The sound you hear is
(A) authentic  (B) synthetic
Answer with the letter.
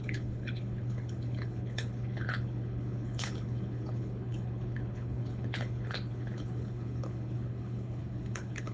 B